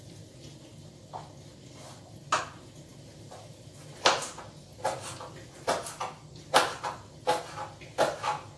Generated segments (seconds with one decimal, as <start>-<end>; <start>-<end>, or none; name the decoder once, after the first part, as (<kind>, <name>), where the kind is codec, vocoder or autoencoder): none